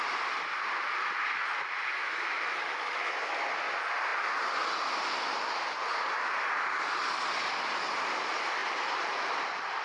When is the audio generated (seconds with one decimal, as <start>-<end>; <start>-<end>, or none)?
2.0-3.3